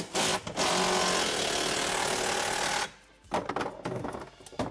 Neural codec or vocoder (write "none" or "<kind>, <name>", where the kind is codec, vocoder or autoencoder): none